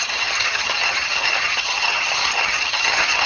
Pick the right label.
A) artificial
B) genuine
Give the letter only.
A